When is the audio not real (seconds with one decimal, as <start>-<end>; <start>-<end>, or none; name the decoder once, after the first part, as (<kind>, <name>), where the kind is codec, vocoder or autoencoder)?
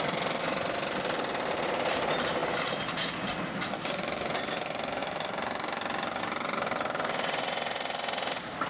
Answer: 0.0-2.4 (vocoder, BigVGAN v2); 3.8-5.0; 6.2-8.7